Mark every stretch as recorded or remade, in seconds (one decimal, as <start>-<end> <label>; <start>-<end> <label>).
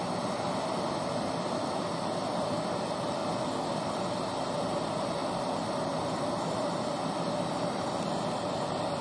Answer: 0.0-3.2 remade; 3.2-4.1 recorded; 4.1-9.0 remade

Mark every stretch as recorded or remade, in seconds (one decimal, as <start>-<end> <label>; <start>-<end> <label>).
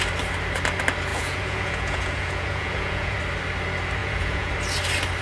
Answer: 0.0-1.1 recorded; 1.1-3.2 remade; 3.2-4.0 recorded; 4.0-4.5 remade; 4.5-5.2 recorded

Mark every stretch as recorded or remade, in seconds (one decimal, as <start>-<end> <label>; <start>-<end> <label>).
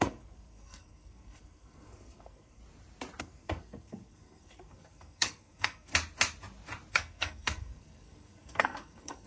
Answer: 0.0-2.6 remade; 2.6-3.2 recorded; 3.2-5.9 remade; 5.9-6.9 recorded; 6.9-9.3 remade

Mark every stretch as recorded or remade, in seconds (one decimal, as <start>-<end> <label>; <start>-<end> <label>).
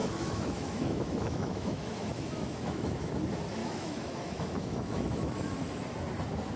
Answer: 0.0-3.1 remade; 3.1-3.6 recorded; 3.6-5.5 remade; 5.5-6.6 recorded